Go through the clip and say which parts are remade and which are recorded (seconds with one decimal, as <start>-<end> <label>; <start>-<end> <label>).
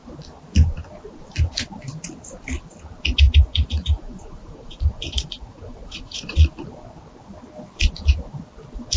0.0-3.5 recorded; 3.5-6.5 remade; 6.5-9.0 recorded